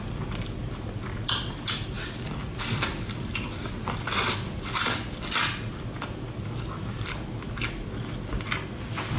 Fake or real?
real